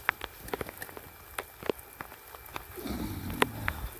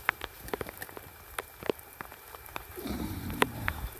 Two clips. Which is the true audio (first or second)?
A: first